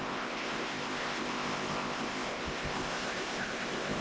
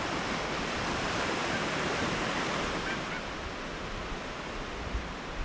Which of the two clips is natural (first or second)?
second